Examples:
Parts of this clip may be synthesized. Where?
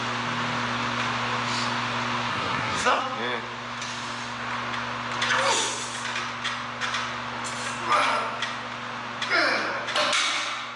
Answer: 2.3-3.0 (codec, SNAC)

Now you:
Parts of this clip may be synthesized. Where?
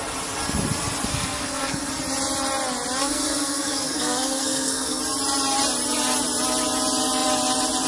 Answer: 1.1-1.9 (codec, SNAC); 3.0-5.0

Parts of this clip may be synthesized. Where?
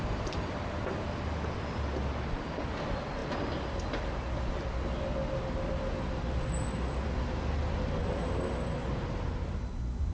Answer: none